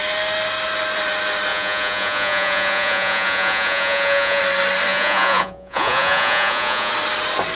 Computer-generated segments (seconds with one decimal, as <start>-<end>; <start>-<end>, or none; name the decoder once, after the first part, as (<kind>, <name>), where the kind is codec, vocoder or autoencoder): 1.5-4.4 (vocoder, Vocos); 4.9-6.9